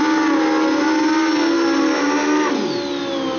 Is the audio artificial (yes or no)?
no